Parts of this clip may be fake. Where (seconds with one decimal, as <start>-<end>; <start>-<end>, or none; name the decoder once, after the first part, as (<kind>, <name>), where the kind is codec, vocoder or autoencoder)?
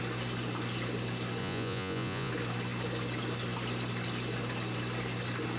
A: 1.4-2.3 (vocoder, Vocos)